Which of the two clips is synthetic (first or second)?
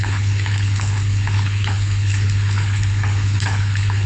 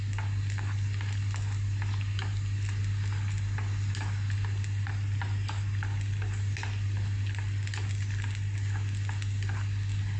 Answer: first